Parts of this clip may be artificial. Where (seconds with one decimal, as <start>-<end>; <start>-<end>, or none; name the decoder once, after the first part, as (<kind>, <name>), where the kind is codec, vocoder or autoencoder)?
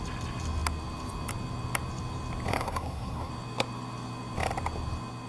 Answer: 2.5-3.3 (codec, SNAC)